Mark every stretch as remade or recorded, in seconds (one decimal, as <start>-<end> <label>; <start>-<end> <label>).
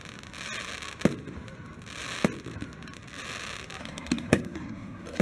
0.0-3.8 recorded; 3.8-5.2 remade